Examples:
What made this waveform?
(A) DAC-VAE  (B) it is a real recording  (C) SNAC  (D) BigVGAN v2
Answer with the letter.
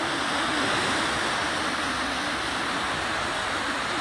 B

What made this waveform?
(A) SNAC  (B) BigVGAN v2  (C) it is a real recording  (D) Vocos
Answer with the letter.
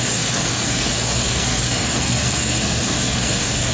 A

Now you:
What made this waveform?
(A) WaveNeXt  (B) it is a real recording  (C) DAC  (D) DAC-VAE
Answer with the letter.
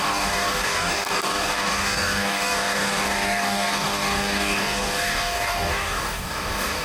C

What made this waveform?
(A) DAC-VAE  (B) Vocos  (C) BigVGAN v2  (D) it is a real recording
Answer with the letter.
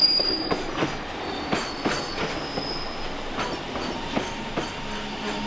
D